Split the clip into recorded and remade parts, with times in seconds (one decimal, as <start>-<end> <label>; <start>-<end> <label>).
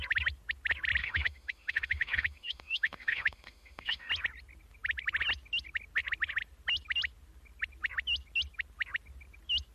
0.0-1.0 recorded; 1.0-4.1 remade; 4.1-9.7 recorded